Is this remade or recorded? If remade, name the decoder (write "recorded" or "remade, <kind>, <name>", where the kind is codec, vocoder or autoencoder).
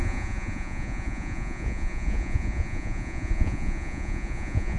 remade, vocoder, Vocos